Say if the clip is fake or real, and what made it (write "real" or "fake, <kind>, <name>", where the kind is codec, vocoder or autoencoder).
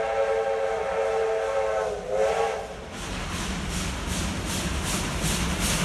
real